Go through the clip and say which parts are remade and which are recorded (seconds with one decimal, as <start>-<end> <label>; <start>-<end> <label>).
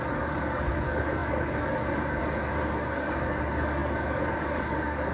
0.0-5.1 remade